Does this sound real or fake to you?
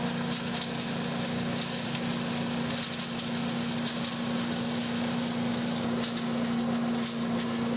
real